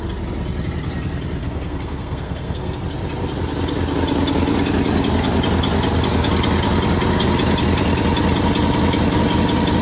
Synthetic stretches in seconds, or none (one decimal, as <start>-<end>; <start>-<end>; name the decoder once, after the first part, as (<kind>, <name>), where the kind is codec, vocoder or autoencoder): 1.4-2.8 (codec, SNAC)